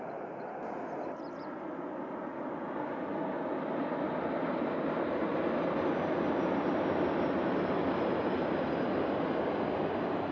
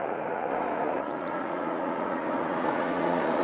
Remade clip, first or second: second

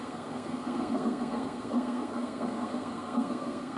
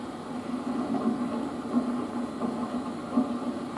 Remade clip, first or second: first